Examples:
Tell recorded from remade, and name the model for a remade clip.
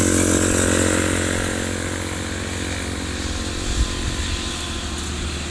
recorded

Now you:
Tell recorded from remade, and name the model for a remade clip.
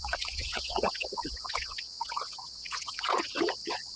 remade, vocoder, WaveNeXt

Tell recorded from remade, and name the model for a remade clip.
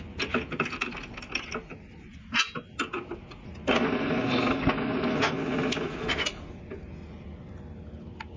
recorded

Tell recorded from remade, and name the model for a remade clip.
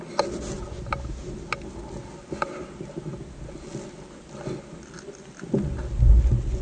recorded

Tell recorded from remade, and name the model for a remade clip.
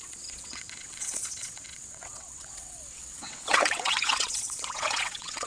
remade, vocoder, WaveNeXt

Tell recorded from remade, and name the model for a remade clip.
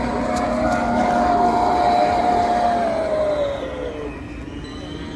recorded